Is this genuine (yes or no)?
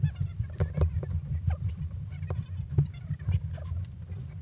no